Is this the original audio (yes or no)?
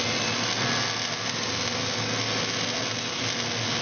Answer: yes